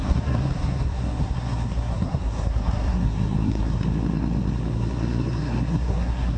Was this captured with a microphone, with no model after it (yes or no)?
no